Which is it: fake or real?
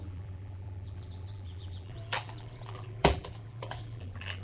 fake